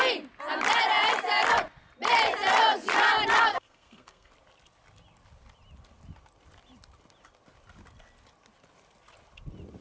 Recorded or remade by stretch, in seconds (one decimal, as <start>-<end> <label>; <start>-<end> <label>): 0.0-3.5 recorded; 3.5-4.3 remade; 4.3-9.8 recorded